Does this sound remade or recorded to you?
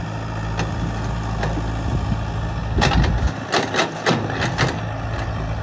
recorded